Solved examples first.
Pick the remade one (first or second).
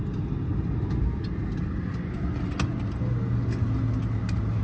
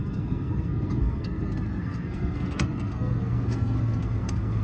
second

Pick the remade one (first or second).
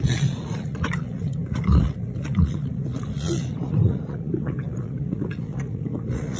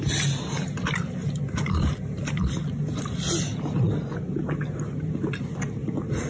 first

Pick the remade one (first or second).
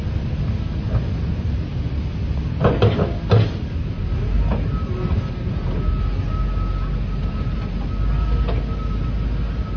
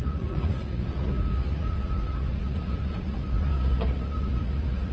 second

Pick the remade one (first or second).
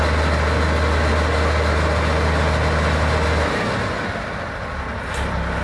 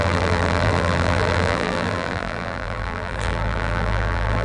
second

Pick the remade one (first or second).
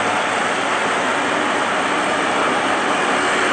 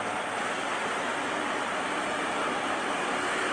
second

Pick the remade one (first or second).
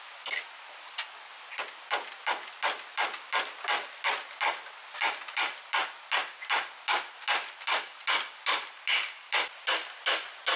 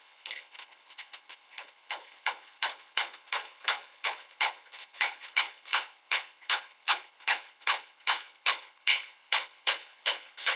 second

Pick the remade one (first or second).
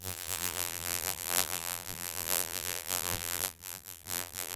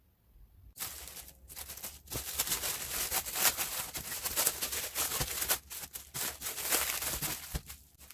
first